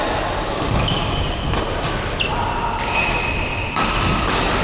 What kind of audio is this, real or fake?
real